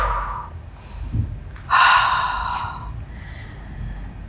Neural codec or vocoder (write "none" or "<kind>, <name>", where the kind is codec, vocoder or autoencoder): none